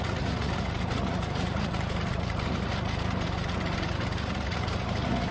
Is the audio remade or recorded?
remade